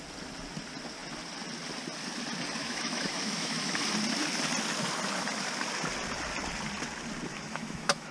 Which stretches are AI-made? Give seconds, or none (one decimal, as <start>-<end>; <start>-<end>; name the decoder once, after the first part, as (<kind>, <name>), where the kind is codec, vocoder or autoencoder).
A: 2.6-3.8 (autoencoder, DAC-VAE); 7.3-8.1